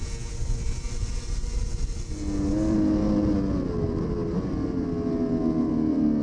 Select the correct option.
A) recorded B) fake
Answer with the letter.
A